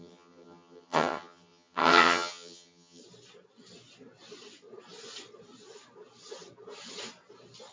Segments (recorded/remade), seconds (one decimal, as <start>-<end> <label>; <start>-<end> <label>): 0.0-3.0 remade; 3.0-7.7 recorded

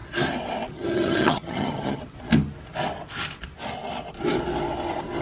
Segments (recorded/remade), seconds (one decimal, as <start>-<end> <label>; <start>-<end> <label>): 0.0-0.7 recorded; 0.7-2.0 remade; 2.0-5.2 recorded

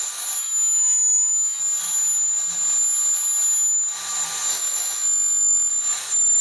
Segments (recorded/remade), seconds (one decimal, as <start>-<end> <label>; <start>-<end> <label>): 0.0-0.4 recorded; 0.4-1.6 remade; 1.6-4.5 recorded; 4.5-5.7 remade; 5.7-6.4 recorded

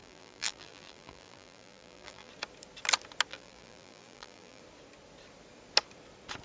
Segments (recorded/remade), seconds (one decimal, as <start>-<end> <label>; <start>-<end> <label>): 0.0-2.3 remade; 2.3-3.3 recorded; 3.3-4.6 remade; 4.6-6.4 recorded

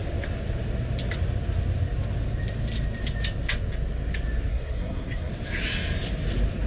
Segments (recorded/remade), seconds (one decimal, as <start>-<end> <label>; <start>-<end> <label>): 0.0-4.5 recorded; 4.5-5.3 remade; 5.3-6.7 recorded

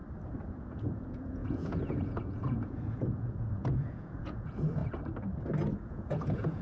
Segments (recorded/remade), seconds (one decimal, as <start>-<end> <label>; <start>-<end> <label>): 0.0-0.6 recorded; 0.6-4.8 remade; 4.8-5.9 recorded; 5.9-6.6 remade